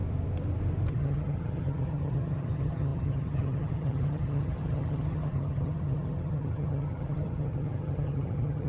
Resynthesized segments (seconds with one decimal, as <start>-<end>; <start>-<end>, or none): 0.9-8.7